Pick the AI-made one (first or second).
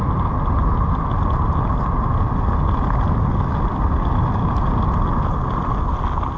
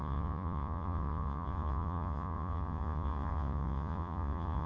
second